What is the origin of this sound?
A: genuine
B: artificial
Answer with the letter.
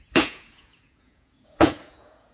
B